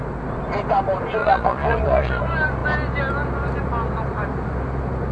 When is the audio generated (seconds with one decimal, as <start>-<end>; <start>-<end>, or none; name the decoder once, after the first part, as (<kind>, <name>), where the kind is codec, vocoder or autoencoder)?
1.2-2.2 (vocoder, Vocos)